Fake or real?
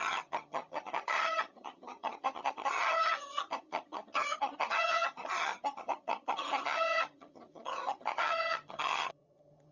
fake